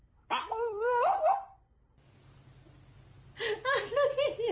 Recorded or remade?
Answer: recorded